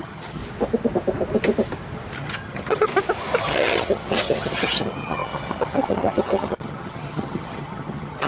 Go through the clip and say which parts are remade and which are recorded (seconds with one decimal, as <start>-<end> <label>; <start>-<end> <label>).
0.0-0.4 remade; 0.4-2.2 recorded; 2.2-2.9 remade; 2.9-3.4 recorded; 3.4-8.3 remade